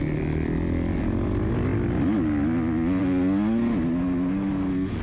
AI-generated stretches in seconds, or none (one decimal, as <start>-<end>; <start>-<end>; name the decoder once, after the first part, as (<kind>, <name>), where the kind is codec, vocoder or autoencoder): none